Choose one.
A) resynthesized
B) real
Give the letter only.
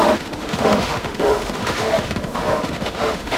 A